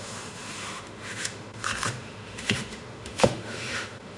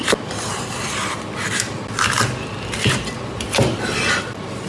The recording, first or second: second